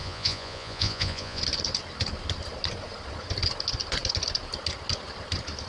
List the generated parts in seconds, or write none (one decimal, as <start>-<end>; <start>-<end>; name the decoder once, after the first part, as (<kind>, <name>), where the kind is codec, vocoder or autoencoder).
0.0-1.4 (vocoder, Vocos)